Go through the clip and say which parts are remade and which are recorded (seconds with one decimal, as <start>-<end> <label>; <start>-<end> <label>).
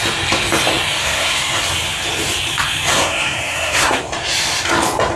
0.0-1.0 recorded; 1.0-1.6 remade; 1.6-2.9 recorded; 2.9-4.0 remade; 4.0-5.2 recorded